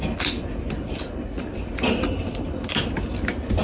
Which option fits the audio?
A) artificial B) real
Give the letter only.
B